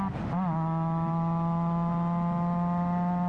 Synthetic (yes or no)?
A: no